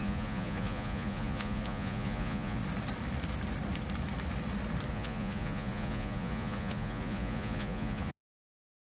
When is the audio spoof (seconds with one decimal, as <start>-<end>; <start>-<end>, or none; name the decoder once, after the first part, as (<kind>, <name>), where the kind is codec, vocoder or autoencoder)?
0.0-2.6 (vocoder, Vocos); 4.9-8.8